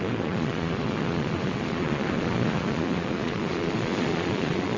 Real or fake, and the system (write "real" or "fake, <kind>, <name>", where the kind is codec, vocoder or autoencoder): fake, vocoder, Vocos